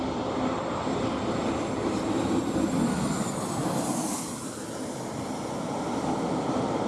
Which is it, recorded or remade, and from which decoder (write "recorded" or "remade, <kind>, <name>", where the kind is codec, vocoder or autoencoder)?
recorded